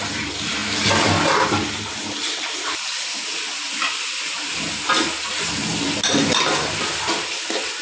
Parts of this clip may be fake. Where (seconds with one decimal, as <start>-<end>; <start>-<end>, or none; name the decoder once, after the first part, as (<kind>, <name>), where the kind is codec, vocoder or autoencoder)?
none

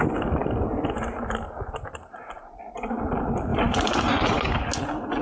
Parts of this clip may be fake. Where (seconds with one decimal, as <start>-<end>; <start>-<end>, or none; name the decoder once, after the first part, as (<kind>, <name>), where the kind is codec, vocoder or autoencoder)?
3.5-4.4 (vocoder, BigVGAN v2)